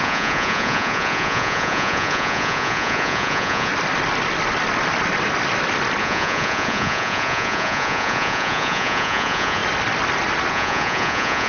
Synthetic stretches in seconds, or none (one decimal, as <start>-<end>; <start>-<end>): 0.0-3.7; 6.0-9.6; 10.5-11.5

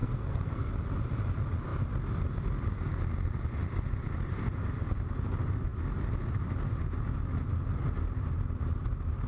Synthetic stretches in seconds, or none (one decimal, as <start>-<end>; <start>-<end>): 0.0-0.7

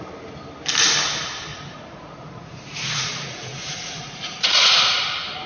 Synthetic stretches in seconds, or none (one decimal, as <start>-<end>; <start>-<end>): 1.5-4.8

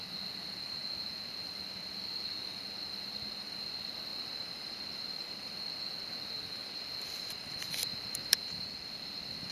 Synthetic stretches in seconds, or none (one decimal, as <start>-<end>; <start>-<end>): 4.1-5.6; 6.6-9.5

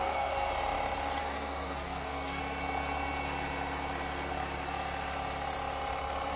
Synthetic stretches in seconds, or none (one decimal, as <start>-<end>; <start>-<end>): 0.0-0.5; 1.2-2.4

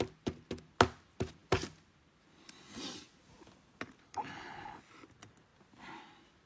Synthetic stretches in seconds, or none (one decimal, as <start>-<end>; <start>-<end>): 4.0-4.8

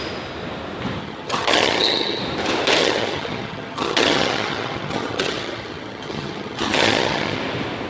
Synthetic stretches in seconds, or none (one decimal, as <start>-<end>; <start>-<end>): 1.0-2.2; 2.8-7.4

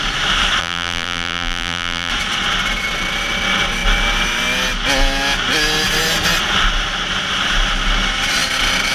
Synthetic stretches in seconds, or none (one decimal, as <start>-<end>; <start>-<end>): 0.6-2.1